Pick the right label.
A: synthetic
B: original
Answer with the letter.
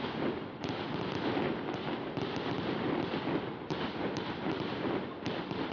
B